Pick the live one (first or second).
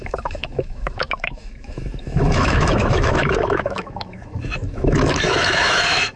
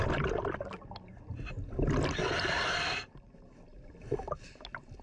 second